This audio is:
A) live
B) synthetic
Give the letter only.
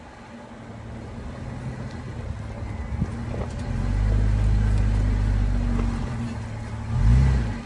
A